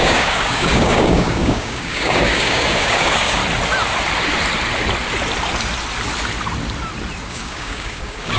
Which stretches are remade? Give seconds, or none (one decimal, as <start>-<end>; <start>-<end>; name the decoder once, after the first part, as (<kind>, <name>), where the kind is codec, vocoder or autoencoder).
0.0-3.4 (codec, DAC); 7.3-8.4